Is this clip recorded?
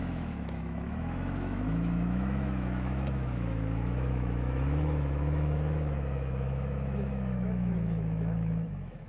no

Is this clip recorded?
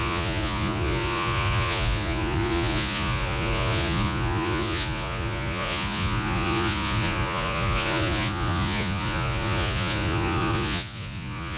no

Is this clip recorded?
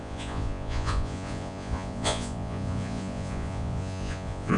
no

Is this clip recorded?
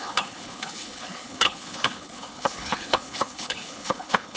no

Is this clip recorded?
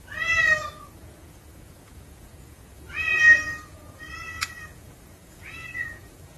no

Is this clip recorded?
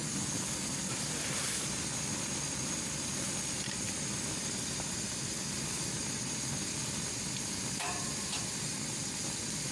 yes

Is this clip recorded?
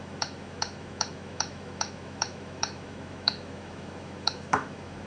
no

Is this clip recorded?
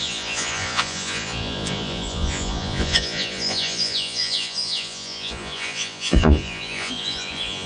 no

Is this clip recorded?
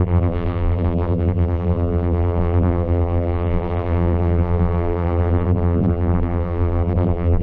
no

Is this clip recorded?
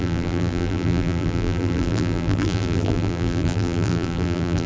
no